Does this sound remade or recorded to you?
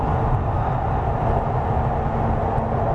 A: recorded